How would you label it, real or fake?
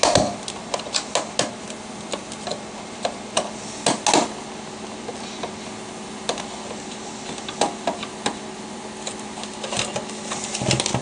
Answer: real